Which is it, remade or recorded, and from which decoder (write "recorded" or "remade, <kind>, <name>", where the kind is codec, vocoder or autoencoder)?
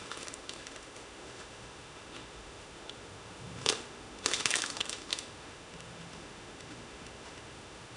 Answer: remade, autoencoder, DAC-VAE